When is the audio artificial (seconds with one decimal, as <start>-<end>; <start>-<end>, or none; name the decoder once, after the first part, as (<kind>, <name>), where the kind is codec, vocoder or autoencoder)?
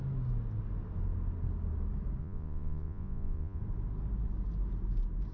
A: 2.2-3.6 (vocoder, Vocos)